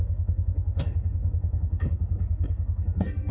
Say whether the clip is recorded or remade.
remade